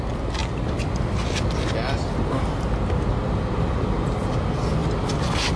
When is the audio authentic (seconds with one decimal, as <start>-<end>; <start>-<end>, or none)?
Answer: 0.0-5.6